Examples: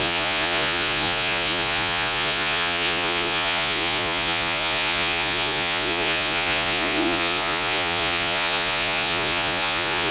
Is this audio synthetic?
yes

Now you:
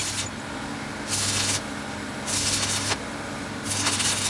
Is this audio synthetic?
no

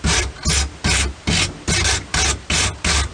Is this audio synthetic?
no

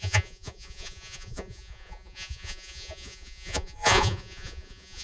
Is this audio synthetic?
yes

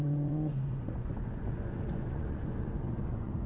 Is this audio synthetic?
yes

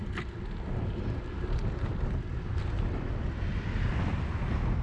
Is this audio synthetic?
no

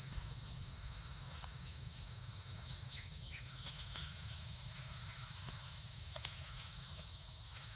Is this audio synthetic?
yes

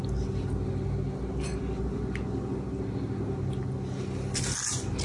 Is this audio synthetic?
no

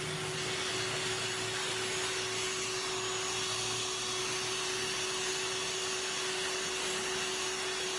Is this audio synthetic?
no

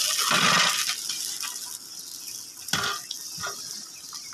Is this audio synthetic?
no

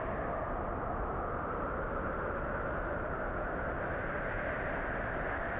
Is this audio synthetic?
no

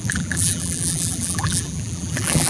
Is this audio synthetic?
yes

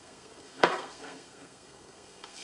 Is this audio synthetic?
yes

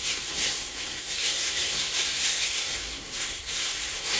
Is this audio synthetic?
yes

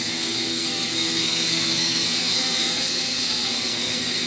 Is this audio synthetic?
yes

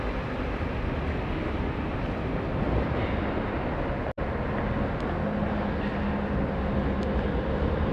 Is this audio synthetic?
no